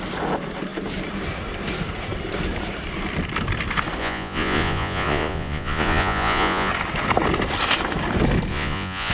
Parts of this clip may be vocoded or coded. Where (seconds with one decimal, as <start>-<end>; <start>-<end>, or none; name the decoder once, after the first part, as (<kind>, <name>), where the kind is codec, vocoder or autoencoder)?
4.0-6.7 (vocoder, Vocos); 8.5-9.1